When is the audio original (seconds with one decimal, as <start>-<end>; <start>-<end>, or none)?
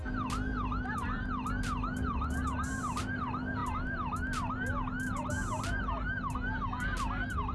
0.0-0.5; 1.3-2.1; 3.0-7.5